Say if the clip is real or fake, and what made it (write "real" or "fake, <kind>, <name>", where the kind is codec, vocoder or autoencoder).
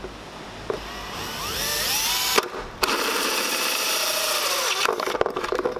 real